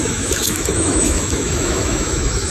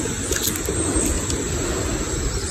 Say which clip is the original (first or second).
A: second